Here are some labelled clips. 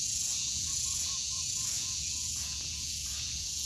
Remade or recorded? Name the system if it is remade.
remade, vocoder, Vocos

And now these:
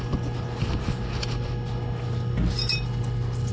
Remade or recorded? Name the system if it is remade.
recorded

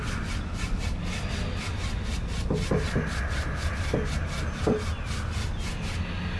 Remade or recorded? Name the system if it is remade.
recorded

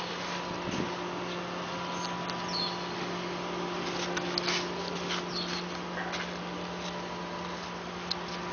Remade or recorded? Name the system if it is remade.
recorded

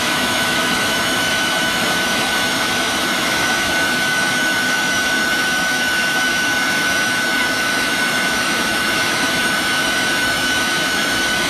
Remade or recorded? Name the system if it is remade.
remade, autoencoder, DAC-VAE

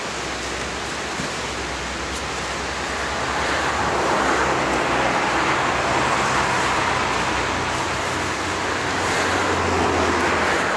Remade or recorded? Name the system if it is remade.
recorded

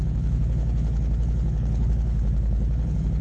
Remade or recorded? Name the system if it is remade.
remade, codec, HILCodec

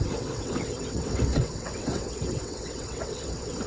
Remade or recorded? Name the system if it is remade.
remade, vocoder, WaveNeXt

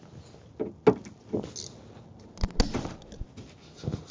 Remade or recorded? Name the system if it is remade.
recorded